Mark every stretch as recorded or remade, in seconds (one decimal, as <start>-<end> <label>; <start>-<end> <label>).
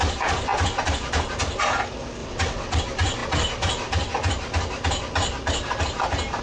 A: 0.0-2.2 recorded; 2.2-2.8 remade; 2.8-6.4 recorded